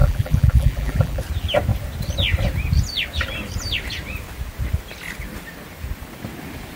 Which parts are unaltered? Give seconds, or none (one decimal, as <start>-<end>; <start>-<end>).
1.2-6.8